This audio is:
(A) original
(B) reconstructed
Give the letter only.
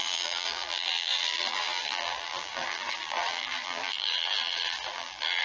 B